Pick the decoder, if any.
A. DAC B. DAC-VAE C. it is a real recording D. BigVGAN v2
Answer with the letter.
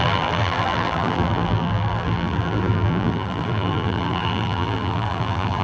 D